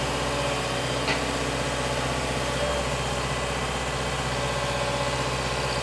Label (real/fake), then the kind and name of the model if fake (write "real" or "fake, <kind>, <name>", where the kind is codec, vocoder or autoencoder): real